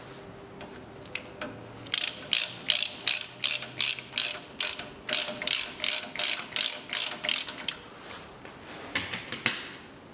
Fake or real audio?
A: real